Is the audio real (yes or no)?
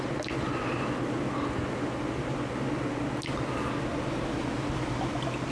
yes